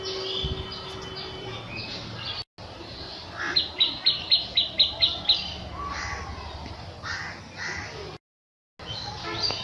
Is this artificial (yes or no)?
no